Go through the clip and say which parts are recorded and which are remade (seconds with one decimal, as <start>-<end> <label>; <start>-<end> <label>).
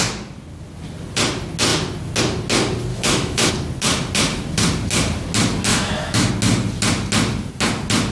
0.0-2.9 recorded; 2.9-3.5 remade; 3.5-5.7 recorded; 5.7-6.3 remade; 6.3-8.1 recorded